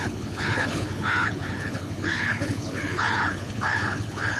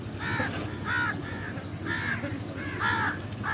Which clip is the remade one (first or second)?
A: first